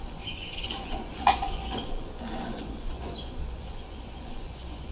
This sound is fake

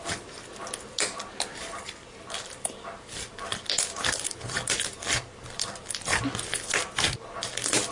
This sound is real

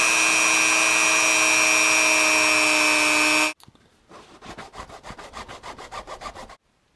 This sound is real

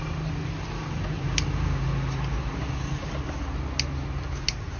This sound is real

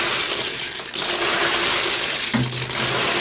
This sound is real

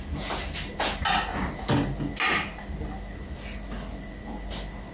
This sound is real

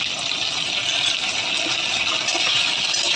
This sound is real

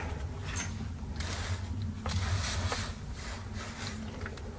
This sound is real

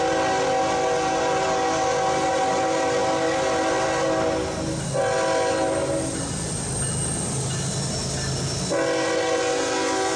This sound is real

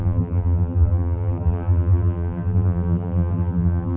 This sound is fake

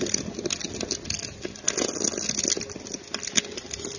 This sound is real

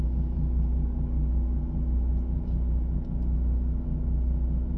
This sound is real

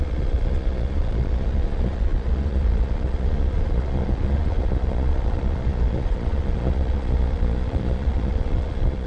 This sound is fake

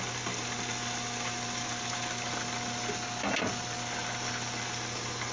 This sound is real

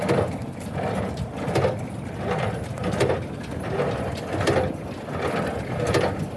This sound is real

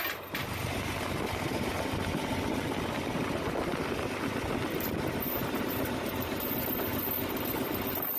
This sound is real